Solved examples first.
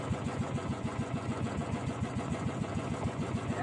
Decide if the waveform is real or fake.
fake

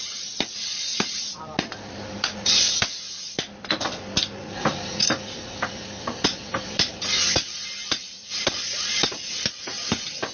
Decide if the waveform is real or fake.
real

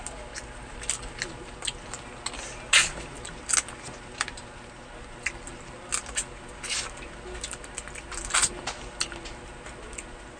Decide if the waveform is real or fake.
real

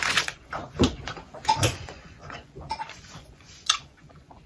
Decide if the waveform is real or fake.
fake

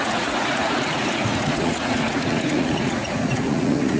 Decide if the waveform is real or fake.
fake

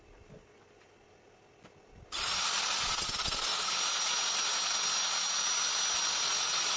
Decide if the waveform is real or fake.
real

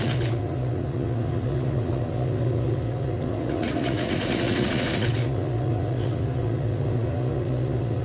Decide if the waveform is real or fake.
fake